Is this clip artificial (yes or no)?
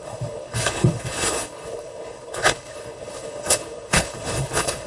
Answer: yes